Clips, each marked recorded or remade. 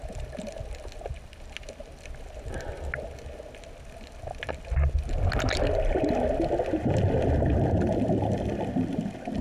recorded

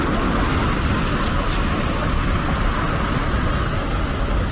recorded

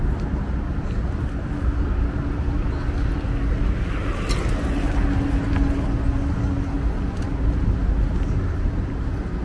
recorded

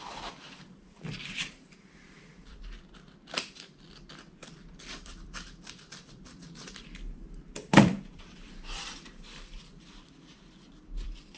remade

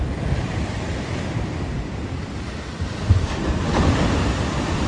recorded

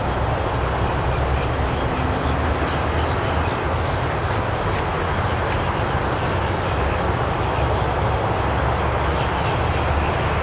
recorded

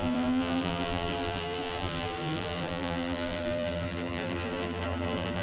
remade